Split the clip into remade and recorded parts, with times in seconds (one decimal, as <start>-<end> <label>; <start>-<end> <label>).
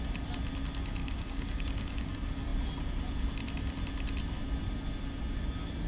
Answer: 0.0-1.0 recorded; 1.0-2.1 remade; 2.1-5.9 recorded